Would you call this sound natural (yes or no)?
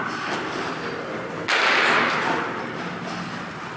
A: yes